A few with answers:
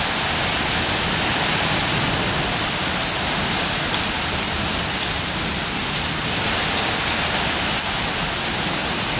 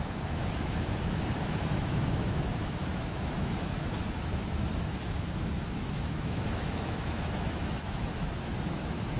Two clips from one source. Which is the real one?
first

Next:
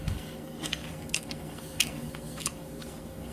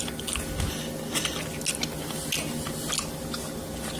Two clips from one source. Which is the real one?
second